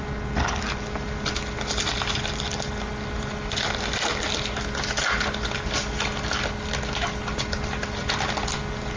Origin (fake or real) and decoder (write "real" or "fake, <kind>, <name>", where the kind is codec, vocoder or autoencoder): real